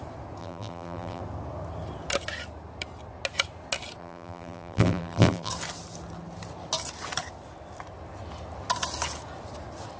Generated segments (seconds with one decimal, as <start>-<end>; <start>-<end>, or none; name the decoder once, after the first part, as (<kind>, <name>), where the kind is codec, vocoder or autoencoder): 0.4-1.2 (vocoder, BigVGAN v2); 4.0-5.5